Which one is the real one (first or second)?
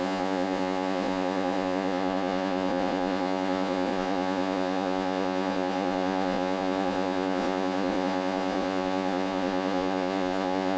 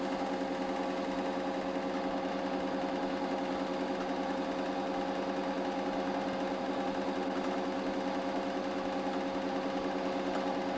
second